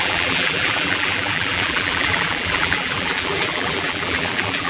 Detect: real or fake fake